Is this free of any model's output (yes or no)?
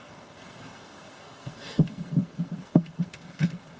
no